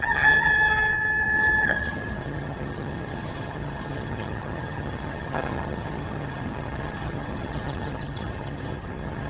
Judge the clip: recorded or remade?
remade